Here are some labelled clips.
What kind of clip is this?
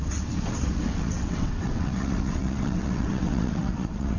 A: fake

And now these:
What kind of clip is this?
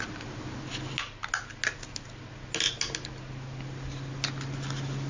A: real